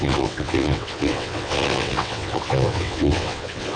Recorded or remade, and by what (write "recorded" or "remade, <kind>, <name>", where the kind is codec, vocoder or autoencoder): remade, vocoder, WaveNeXt